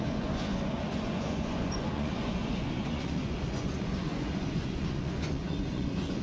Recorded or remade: remade